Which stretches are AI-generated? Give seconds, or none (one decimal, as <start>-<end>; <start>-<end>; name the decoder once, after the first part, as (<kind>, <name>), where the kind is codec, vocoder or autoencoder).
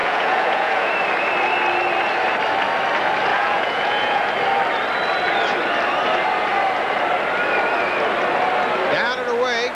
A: 0.0-0.9 (vocoder, Vocos); 3.3-4.3